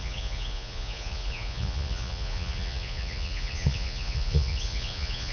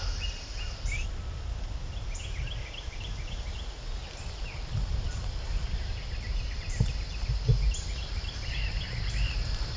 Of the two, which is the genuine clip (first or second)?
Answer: second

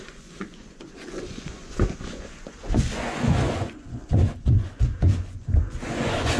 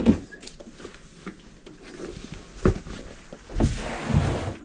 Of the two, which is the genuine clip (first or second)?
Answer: second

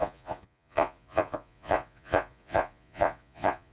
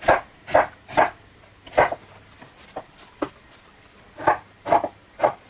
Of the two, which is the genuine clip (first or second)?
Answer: second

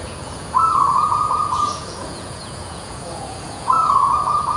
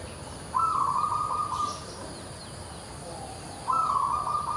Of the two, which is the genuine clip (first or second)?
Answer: second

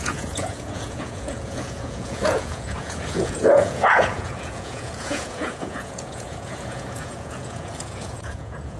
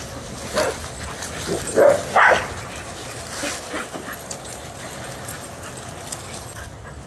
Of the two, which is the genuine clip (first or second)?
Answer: second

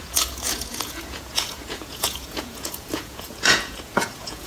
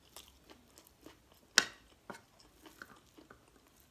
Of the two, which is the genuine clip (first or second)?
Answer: second